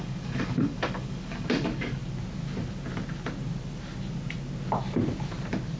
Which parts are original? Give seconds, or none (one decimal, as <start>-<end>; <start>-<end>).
2.0-5.8